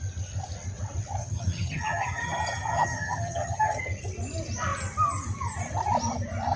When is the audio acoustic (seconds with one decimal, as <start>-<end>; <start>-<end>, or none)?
0.0-1.2; 3.8-6.6